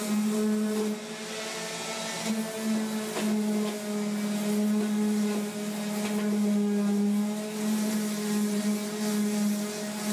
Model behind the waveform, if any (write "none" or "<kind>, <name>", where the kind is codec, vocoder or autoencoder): none